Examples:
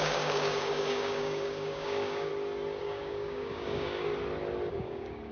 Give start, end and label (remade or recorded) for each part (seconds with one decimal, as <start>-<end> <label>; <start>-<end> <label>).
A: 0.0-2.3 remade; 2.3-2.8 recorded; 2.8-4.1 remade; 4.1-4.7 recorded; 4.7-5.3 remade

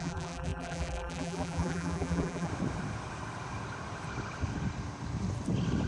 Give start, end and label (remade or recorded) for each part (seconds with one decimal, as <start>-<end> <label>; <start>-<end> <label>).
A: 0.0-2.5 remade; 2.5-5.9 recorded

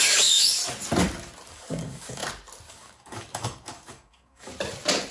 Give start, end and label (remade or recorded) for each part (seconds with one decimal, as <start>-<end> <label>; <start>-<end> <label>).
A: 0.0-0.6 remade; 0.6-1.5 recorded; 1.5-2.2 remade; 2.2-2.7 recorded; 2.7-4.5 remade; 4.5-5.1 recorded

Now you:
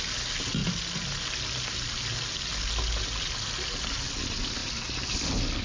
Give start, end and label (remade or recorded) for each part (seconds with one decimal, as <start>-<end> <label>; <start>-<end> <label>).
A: 0.0-5.6 recorded